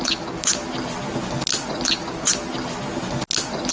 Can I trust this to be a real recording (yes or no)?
yes